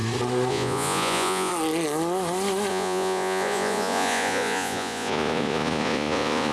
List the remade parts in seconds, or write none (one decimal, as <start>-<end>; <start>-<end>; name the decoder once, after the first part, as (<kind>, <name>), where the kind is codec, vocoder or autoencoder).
0.5-1.5 (vocoder, Vocos); 2.7-6.5